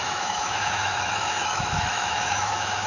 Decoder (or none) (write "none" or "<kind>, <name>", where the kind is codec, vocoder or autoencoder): autoencoder, DAC-VAE